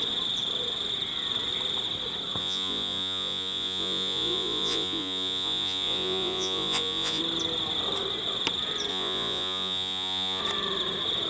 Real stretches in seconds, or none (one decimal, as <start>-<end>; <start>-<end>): 0.0-2.4; 7.2-8.9; 10.4-11.3